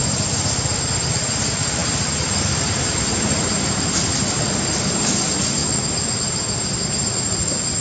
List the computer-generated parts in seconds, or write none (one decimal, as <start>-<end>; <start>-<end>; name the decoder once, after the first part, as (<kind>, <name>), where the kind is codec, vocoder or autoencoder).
0.0-5.6 (vocoder, BigVGAN v2); 6.2-7.8